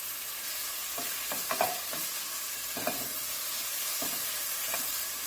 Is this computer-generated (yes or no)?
yes